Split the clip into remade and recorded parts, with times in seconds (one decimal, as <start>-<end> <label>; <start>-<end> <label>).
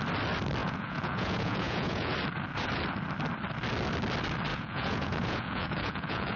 0.0-0.6 recorded; 0.6-2.1 remade; 2.1-4.5 recorded; 4.5-6.4 remade